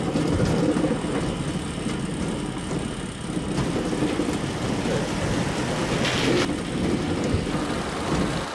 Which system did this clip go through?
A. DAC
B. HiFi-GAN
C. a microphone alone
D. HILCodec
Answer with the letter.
C